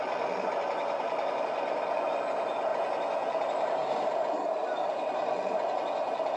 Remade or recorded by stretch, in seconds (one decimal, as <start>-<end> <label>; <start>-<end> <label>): 0.0-6.4 recorded